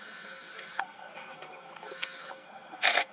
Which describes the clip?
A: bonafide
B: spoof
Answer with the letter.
B